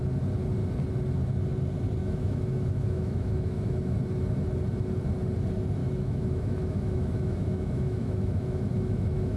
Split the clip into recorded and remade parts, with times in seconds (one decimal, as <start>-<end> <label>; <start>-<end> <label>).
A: 0.0-2.0 recorded; 2.0-4.0 remade; 4.0-5.8 recorded; 5.8-9.4 remade